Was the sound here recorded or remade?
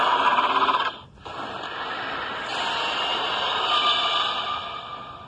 recorded